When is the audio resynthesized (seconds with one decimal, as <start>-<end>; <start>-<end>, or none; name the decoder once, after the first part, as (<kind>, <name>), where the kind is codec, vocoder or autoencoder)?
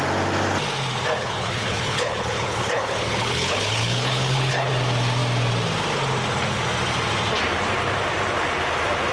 1.2-4.7 (codec, HILCodec)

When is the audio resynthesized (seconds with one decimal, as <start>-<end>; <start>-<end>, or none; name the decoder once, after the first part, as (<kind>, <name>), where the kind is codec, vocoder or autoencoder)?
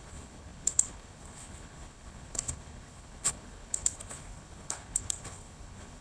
0.0-6.0 (codec, HILCodec)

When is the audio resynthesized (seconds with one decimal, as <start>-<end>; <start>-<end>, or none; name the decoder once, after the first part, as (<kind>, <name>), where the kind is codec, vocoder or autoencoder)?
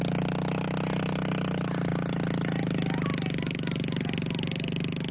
none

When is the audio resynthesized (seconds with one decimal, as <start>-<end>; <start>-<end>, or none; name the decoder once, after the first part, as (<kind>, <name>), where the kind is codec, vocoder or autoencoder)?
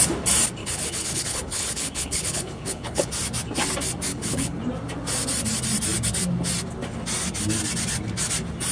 0.6-3.1 (codec, HILCodec); 4.1-4.6